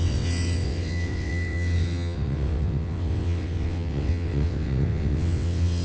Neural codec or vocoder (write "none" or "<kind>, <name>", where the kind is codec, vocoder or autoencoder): vocoder, WaveNeXt